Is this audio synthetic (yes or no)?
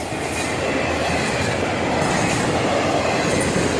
no